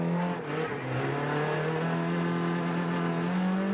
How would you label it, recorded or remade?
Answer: recorded